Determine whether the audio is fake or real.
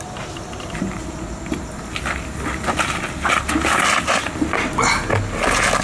real